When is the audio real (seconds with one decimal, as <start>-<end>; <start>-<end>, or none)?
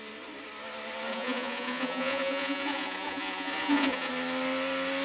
0.0-1.1; 4.1-5.0